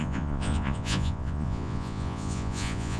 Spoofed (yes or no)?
yes